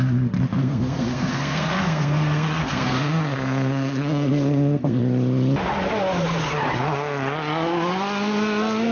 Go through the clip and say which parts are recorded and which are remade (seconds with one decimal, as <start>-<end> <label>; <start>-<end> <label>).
0.0-0.6 recorded; 0.6-5.0 remade; 5.0-8.9 recorded